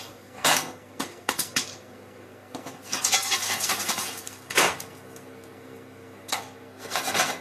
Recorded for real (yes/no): no